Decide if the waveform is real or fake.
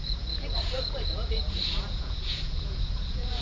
fake